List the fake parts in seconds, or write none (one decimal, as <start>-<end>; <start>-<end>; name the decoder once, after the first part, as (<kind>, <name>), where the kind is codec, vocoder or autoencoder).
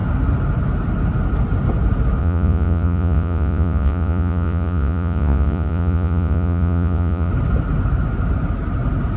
2.2-7.3 (vocoder, Vocos)